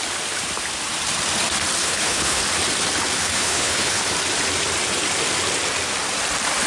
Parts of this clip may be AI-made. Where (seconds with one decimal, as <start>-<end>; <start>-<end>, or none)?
1.8-2.4; 3.2-4.0